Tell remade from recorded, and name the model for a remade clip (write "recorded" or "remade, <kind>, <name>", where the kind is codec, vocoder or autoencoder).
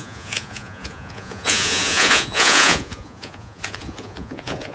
remade, vocoder, Vocos